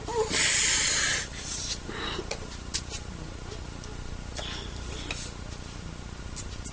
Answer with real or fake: real